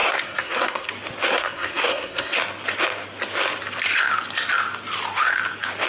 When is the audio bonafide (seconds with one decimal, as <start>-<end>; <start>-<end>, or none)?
0.9-1.3; 2.4-5.9